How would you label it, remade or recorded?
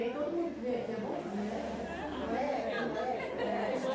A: recorded